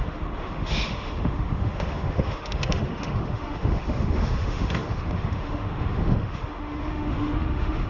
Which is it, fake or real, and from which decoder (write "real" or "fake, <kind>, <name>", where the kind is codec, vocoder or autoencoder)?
fake, autoencoder, DAC-VAE